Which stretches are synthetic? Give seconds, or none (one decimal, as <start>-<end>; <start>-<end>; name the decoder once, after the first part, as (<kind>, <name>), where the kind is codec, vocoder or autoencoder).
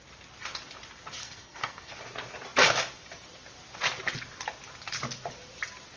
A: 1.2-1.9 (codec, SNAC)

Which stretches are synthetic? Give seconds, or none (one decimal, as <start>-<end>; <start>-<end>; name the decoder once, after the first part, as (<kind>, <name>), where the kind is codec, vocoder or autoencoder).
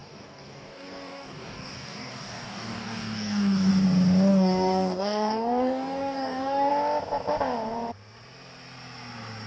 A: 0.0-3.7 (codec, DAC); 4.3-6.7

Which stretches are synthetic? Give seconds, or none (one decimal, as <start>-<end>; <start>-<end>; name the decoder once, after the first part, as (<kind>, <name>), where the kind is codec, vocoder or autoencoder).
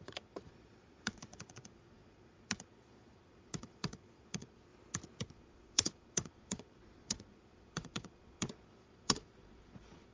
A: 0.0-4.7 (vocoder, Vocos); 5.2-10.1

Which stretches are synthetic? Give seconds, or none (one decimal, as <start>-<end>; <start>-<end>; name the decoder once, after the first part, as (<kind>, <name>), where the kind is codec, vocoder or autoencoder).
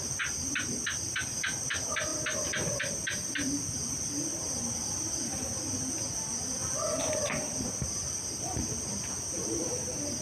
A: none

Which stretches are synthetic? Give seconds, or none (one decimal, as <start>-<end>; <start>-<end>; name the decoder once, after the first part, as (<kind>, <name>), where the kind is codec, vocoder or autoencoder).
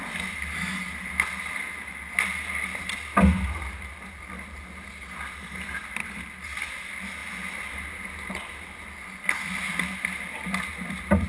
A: none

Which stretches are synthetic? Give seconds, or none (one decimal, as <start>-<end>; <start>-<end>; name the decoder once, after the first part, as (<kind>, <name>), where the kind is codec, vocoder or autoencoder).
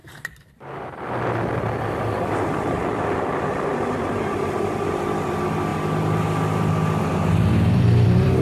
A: 3.2-5.7 (vocoder, BigVGAN v2); 7.0-8.4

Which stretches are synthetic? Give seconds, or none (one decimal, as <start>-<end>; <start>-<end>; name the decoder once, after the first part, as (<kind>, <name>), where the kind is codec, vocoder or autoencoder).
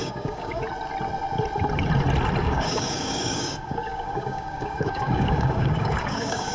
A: 0.0-0.6 (codec, DAC); 2.4-6.5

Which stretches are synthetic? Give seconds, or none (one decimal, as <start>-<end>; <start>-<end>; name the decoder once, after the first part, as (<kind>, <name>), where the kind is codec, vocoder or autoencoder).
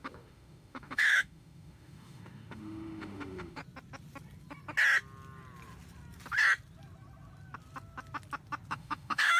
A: 0.0-3.6 (autoencoder, DAC-VAE); 8.7-9.4